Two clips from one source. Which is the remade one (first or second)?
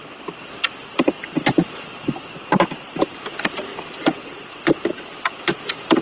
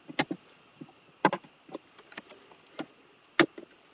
first